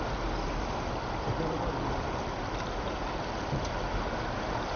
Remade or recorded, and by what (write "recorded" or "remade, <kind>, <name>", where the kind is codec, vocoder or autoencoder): recorded